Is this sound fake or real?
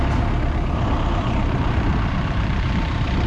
fake